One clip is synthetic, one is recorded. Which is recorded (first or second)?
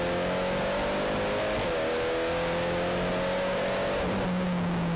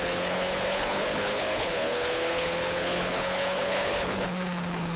first